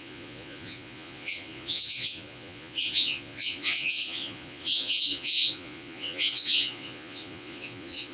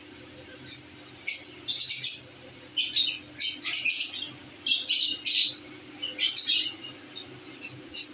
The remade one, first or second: first